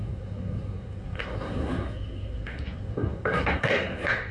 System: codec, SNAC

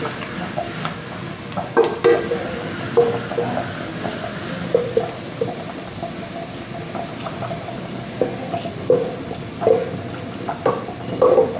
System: none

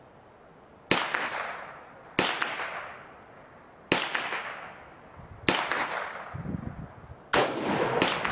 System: none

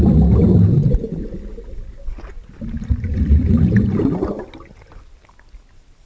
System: none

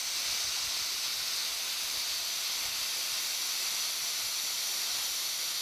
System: none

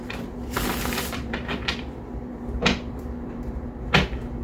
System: vocoder, BigVGAN v2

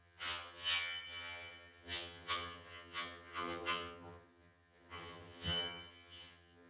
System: vocoder, HiFi-GAN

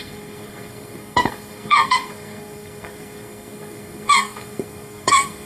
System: codec, SNAC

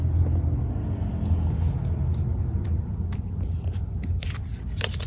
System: none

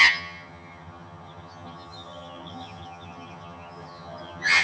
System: vocoder, HiFi-GAN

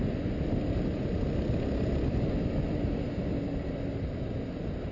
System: none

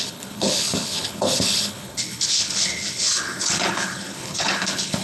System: codec, HILCodec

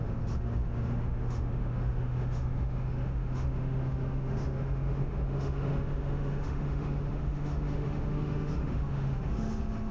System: autoencoder, DAC-VAE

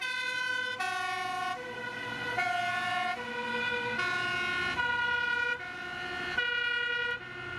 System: none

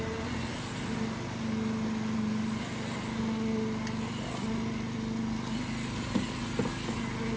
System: none